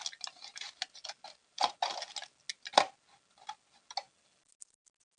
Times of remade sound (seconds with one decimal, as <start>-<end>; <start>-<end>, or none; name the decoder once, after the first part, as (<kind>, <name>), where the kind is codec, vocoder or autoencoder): 1.4-2.1 (vocoder, BigVGAN v2)